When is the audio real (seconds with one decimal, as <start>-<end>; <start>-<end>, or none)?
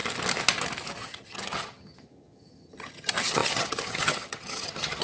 0.0-1.0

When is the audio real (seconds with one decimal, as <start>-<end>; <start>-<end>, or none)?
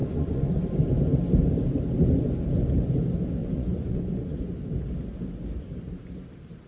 0.6-3.4; 4.5-6.7